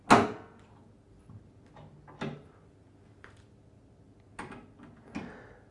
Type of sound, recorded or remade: recorded